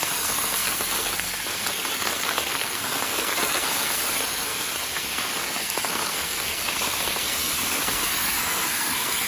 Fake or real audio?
fake